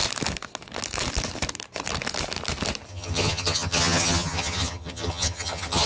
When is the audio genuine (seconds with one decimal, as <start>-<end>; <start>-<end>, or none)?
0.0-2.9

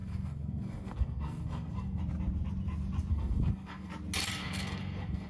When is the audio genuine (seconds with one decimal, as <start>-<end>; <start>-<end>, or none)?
2.0-3.1; 3.9-4.4

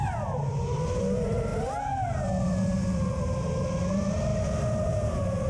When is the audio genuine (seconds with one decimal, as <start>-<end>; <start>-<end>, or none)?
1.5-2.6; 4.3-4.9

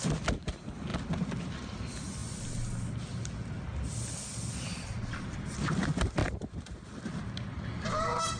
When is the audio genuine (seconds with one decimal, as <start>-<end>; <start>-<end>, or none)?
0.0-6.2; 6.7-8.4

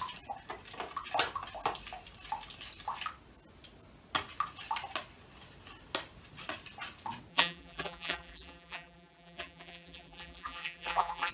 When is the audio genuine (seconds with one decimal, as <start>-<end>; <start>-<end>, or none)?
0.0-7.3